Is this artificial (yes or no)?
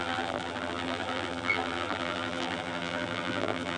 yes